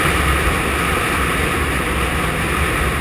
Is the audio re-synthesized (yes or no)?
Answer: no